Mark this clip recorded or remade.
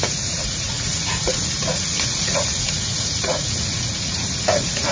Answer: remade